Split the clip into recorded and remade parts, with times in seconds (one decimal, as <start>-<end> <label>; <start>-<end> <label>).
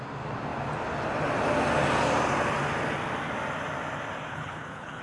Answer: 0.0-4.3 recorded; 4.3-5.0 remade